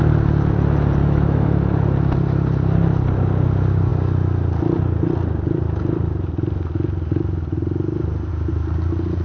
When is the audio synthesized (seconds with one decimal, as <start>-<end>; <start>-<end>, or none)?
1.0-1.5

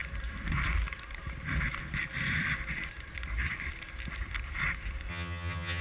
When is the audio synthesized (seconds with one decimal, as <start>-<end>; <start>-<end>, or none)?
5.1-5.8

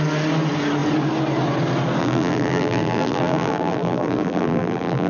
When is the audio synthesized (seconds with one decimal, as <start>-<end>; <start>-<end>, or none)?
2.0-5.1

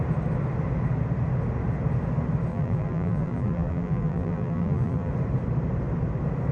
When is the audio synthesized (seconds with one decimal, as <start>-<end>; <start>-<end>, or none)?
2.5-5.1

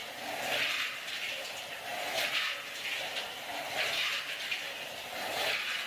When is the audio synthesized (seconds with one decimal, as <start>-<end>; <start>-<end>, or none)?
none